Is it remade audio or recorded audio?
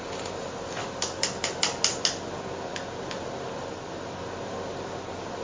recorded